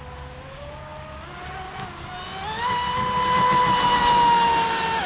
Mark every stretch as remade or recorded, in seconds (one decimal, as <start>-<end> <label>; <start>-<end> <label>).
0.0-5.1 recorded